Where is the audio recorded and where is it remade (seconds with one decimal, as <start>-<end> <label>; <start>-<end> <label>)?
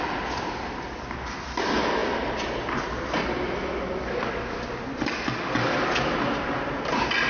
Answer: 0.0-7.3 recorded